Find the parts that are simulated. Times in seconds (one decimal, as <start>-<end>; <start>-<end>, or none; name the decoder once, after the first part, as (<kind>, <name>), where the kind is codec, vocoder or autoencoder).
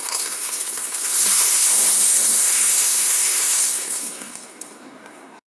0.0-5.6 (codec, SNAC)